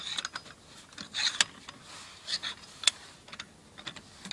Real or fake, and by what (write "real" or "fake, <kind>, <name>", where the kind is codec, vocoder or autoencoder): real